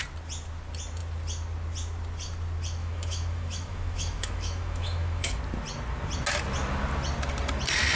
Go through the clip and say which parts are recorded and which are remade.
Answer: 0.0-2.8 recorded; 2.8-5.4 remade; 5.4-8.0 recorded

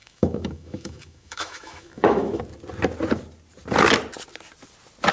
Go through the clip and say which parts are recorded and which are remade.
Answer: 0.0-2.4 remade; 2.4-5.1 recorded

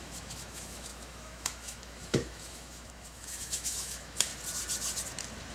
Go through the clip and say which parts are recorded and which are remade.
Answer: 0.0-4.3 remade; 4.3-5.5 recorded

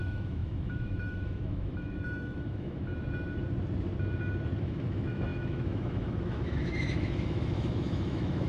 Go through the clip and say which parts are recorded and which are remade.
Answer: 0.0-2.9 remade; 2.9-4.6 recorded; 4.6-8.5 remade

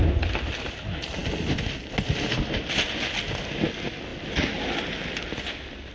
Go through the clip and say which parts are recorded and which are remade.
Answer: 0.0-5.9 recorded

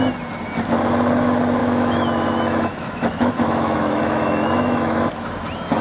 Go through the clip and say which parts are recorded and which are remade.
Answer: 0.0-1.6 recorded; 1.6-5.1 remade; 5.1-5.8 recorded

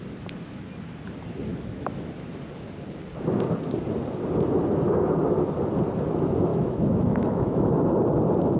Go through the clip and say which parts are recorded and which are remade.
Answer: 0.0-1.5 recorded; 1.5-2.1 remade; 2.1-6.5 recorded; 6.5-7.7 remade; 7.7-8.6 recorded

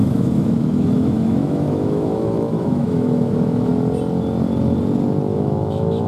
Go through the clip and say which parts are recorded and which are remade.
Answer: 0.0-3.7 remade; 3.7-5.3 recorded; 5.3-6.1 remade